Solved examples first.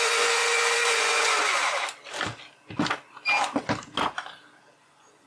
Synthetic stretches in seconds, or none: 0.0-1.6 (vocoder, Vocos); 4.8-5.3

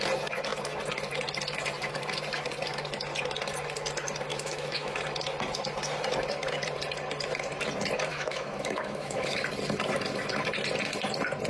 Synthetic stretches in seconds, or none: 4.3-5.0 (autoencoder, DAC-VAE); 8.1-9.4

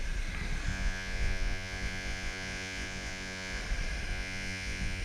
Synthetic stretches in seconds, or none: 0.7-3.6 (vocoder, Vocos); 4.1-5.0

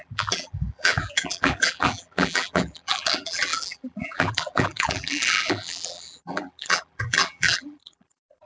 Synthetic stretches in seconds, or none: 0.0-8.5 (vocoder, BigVGAN v2)